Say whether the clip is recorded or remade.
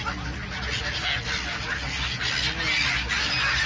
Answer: recorded